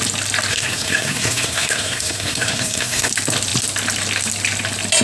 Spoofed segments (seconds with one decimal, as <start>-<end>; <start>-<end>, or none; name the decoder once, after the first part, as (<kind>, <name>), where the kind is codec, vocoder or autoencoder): 0.5-3.1 (codec, SNAC)

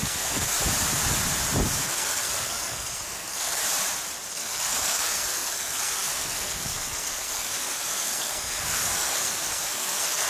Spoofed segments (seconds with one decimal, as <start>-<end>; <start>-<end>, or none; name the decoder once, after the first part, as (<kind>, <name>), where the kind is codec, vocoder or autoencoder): 0.0-0.6 (codec, SNAC); 1.8-3.6; 4.3-10.3